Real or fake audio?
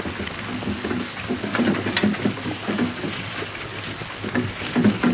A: real